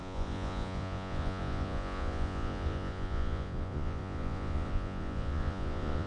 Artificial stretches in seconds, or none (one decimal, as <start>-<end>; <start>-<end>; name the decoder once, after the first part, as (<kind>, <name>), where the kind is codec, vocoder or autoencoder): 0.0-6.1 (vocoder, Vocos)